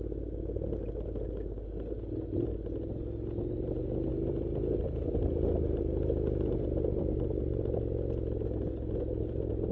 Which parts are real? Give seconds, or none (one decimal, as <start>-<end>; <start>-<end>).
0.0-9.7